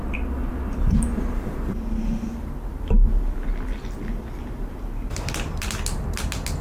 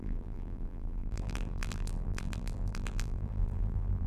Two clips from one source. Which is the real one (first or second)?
first